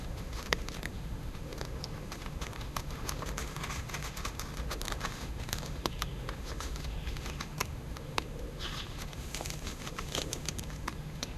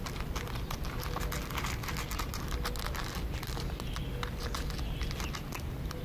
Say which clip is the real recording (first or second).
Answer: second